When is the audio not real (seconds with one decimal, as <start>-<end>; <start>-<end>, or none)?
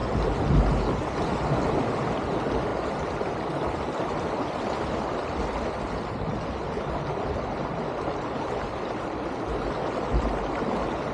none